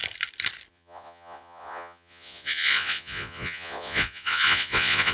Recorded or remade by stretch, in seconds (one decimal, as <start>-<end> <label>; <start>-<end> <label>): 0.0-0.7 recorded; 0.7-5.1 remade